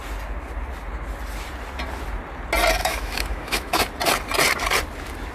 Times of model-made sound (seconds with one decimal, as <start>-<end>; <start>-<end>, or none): 2.8-3.8